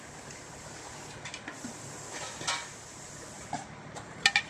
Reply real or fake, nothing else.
real